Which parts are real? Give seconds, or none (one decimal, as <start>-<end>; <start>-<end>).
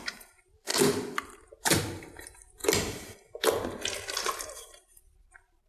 0.7-1.2; 2.6-4.4